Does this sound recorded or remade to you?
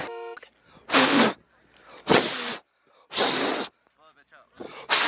recorded